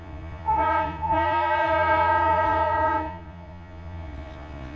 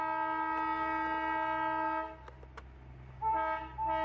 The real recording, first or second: second